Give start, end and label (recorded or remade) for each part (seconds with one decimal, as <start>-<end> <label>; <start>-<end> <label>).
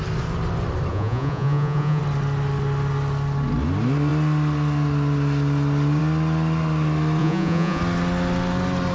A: 0.0-0.9 recorded; 0.9-2.0 remade; 2.0-7.2 recorded; 7.2-7.8 remade; 7.8-8.9 recorded